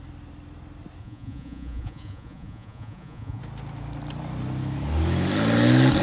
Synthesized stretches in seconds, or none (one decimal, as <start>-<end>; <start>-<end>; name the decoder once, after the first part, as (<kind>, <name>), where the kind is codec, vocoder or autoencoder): 1.0-3.4 (vocoder, Vocos)